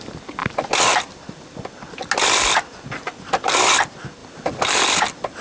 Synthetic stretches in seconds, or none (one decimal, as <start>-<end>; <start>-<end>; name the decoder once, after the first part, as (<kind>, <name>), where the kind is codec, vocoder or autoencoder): none